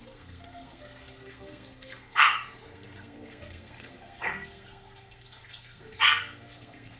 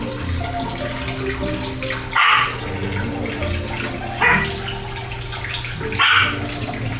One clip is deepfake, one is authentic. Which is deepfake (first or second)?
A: first